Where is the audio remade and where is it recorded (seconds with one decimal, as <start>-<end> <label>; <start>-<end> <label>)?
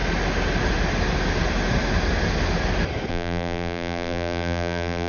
0.0-3.1 recorded; 3.1-5.1 remade